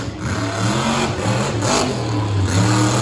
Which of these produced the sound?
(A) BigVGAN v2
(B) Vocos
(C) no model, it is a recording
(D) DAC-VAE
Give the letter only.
C